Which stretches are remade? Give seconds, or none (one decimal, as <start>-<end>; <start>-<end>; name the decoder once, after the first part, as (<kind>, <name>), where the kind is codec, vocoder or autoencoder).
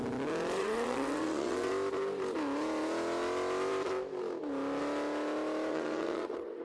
0.6-1.7 (vocoder, WaveNeXt); 5.7-6.6